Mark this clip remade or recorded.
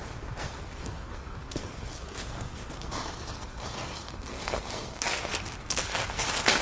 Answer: remade